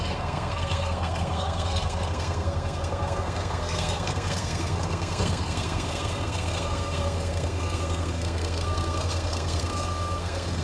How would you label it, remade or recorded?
remade